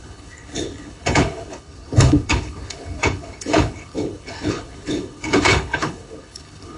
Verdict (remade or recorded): remade